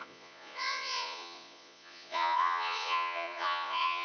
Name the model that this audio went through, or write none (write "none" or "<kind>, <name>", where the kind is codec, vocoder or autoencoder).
vocoder, Vocos